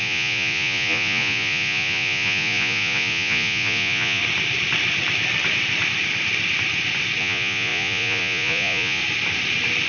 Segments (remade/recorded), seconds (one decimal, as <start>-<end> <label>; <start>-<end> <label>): 0.0-4.2 remade; 4.2-7.2 recorded; 7.2-9.0 remade; 9.0-9.9 recorded